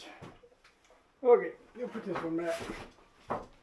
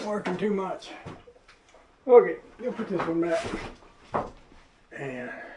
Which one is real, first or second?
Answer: first